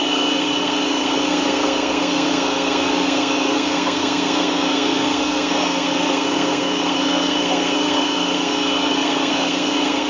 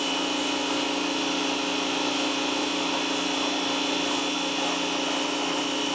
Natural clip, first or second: second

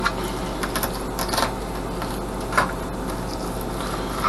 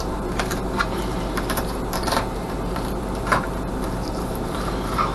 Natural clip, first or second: first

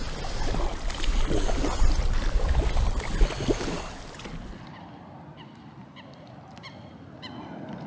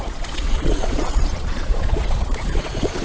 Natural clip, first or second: first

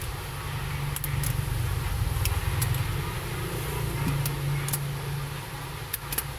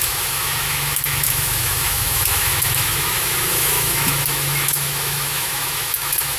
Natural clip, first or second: first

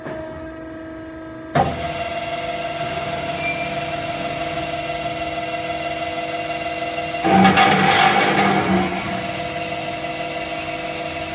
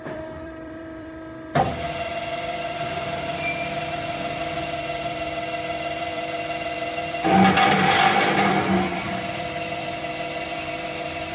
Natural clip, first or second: first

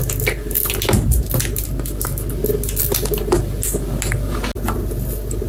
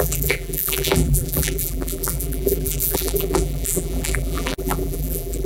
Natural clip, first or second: first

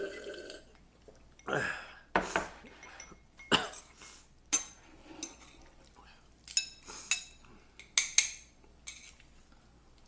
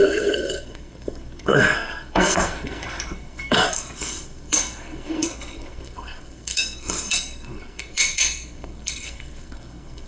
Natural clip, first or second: first